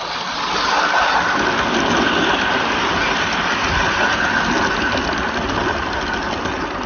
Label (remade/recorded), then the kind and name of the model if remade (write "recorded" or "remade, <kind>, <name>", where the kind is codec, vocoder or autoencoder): recorded